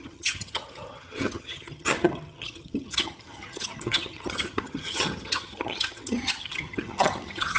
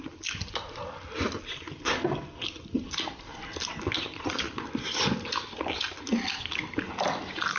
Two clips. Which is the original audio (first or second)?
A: second